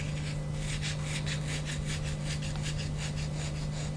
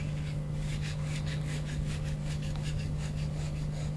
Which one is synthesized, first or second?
second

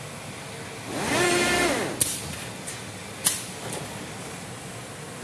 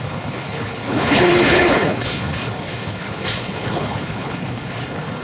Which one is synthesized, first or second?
second